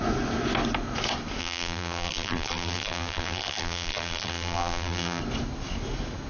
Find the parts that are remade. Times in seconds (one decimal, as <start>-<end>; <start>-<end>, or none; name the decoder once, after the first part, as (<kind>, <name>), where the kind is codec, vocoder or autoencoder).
1.4-5.2 (vocoder, BigVGAN v2)